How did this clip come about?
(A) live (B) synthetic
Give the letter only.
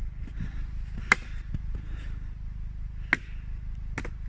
A